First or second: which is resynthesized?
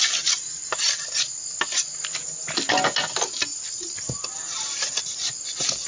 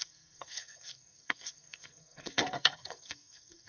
second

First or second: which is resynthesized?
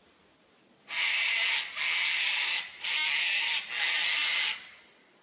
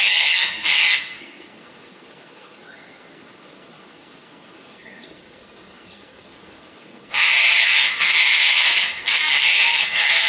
second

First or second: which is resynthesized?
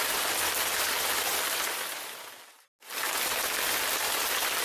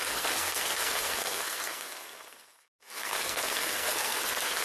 second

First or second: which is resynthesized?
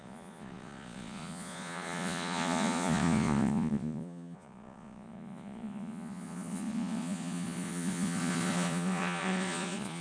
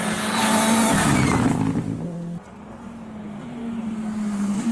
first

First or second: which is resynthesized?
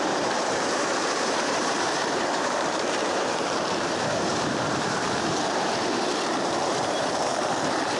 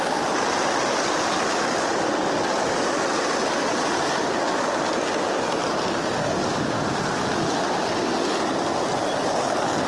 first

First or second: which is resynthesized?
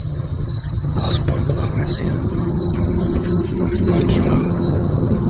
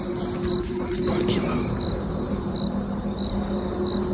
first